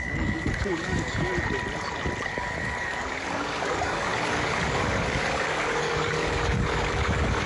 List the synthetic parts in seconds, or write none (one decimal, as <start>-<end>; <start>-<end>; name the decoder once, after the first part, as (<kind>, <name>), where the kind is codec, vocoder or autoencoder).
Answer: 0.0-1.3 (codec, DAC); 2.3-7.5